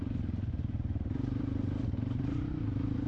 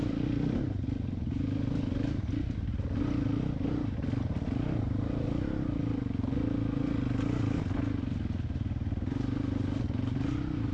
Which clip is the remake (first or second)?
first